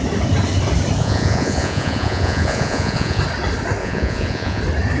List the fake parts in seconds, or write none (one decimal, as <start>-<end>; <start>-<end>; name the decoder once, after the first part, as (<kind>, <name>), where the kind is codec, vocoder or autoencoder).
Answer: 1.0-3.2 (vocoder, Vocos); 3.8-4.6